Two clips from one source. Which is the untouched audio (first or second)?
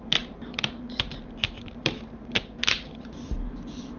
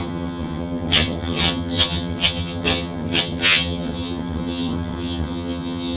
first